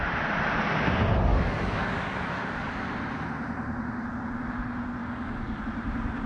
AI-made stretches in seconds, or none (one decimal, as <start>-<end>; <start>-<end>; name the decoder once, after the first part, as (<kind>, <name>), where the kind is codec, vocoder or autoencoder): 1.3-2.8 (codec, DAC); 5.0-5.6